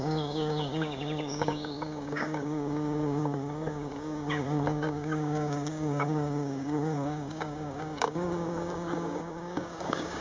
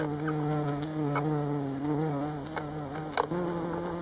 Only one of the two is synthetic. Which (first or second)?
first